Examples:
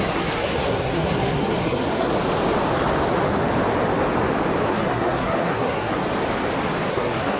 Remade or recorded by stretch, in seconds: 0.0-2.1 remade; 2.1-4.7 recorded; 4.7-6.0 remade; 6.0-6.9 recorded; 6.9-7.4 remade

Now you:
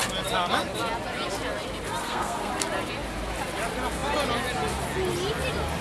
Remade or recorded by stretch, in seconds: 0.0-2.0 recorded; 2.0-2.5 remade; 2.5-5.8 recorded